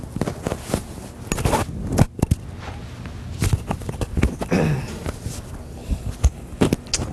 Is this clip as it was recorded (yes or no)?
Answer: yes